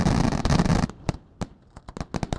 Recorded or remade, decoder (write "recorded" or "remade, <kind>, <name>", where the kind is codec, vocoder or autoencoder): recorded